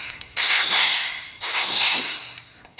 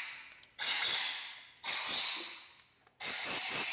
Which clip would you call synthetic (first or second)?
first